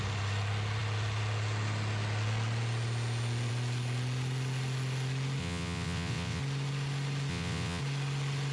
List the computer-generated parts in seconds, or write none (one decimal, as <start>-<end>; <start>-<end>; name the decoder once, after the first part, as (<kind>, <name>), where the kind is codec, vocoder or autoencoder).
5.4-6.4 (vocoder, WaveNeXt); 7.3-7.8